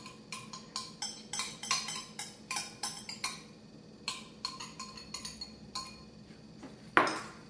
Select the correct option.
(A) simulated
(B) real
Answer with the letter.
B